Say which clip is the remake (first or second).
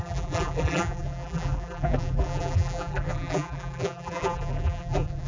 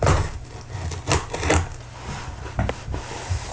first